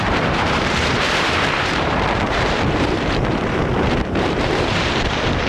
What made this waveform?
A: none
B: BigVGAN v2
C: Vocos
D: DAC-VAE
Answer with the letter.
B